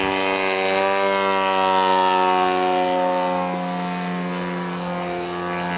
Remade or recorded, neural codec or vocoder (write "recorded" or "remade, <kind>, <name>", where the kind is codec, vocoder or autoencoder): recorded